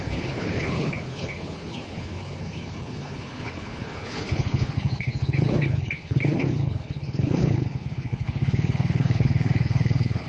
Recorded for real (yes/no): no